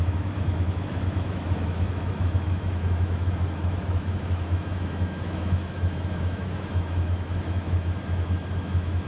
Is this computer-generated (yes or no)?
yes